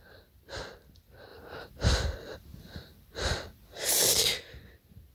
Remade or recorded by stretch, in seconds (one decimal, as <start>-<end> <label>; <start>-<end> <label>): 0.0-1.3 recorded; 1.3-4.0 remade; 4.0-5.1 recorded